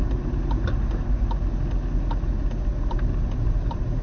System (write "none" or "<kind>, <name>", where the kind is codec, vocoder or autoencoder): none